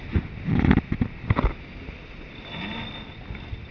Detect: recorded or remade recorded